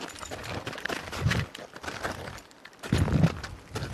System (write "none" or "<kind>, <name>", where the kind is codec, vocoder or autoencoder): vocoder, BigVGAN v2